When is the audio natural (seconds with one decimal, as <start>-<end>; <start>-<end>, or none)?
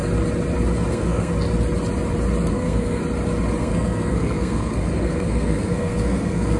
0.0-0.9; 1.3-2.5; 3.0-3.6